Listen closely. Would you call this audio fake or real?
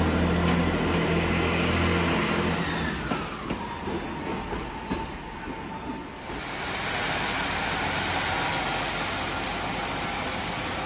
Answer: real